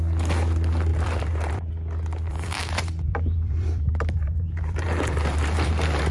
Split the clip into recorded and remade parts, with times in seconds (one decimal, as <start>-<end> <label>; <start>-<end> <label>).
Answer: 0.0-0.9 recorded; 0.9-1.7 remade; 1.7-2.3 recorded; 2.3-6.1 remade